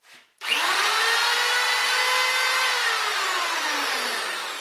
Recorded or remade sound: recorded